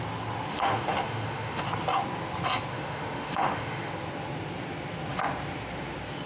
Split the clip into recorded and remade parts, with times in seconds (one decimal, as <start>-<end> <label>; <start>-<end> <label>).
0.0-0.5 recorded; 0.5-1.6 remade; 1.6-2.7 recorded; 2.7-3.9 remade; 3.9-6.3 recorded